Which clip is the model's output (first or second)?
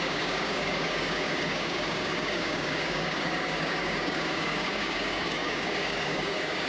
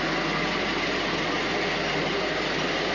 first